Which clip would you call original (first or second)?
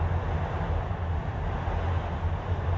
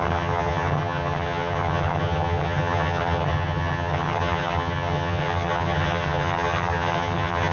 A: first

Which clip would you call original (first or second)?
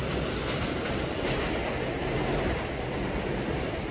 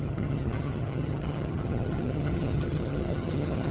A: first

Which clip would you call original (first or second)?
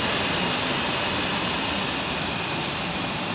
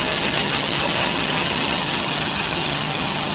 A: first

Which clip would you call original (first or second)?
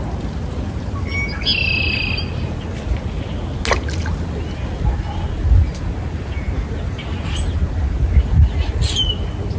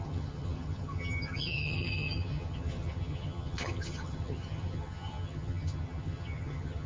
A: first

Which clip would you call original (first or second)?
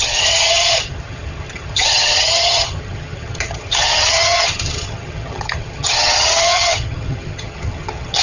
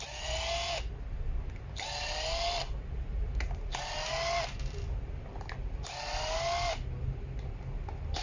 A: second